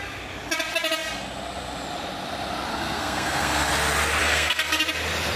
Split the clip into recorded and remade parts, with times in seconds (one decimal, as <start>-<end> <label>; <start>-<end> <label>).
0.0-2.7 recorded; 2.7-3.7 remade; 3.7-4.2 recorded; 4.2-4.8 remade; 4.8-5.4 recorded